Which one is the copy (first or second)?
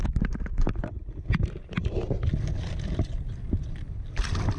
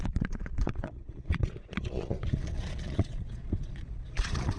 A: second